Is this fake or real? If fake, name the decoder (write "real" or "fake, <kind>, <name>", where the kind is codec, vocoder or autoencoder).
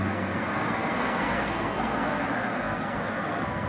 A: fake, codec, SNAC